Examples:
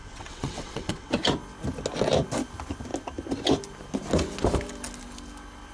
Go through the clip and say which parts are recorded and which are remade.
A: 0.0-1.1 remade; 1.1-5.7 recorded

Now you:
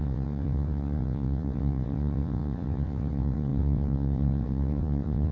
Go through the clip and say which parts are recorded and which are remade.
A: 0.0-5.3 remade

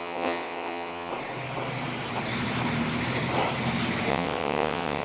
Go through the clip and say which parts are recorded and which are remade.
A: 0.0-1.1 remade; 1.1-4.1 recorded; 4.1-5.0 remade

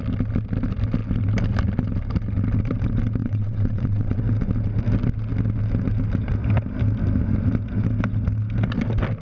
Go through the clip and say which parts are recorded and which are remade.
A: 0.0-3.2 recorded; 3.2-4.2 remade; 4.2-9.2 recorded

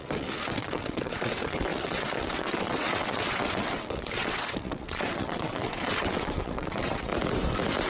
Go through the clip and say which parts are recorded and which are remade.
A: 0.0-7.1 remade; 7.1-7.9 recorded

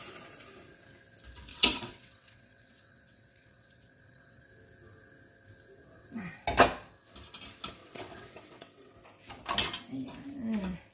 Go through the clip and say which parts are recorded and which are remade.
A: 0.0-1.5 recorded; 1.5-4.4 remade; 4.4-5.8 recorded; 5.8-6.4 remade; 6.4-7.8 recorded; 7.8-8.9 remade; 8.9-10.9 recorded